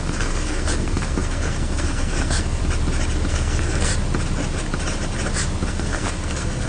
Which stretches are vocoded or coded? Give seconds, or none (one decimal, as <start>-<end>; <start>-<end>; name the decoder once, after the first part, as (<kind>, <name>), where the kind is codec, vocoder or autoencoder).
0.0-2.6 (codec, SNAC); 3.3-3.9; 5.7-6.7